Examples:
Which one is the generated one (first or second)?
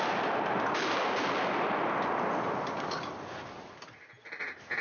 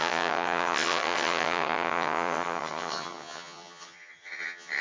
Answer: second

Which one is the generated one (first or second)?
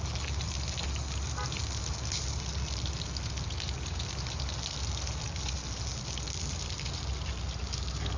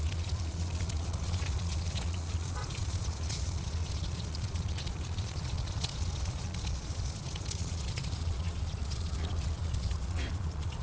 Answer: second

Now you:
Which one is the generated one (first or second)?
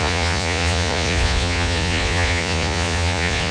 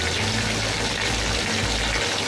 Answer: first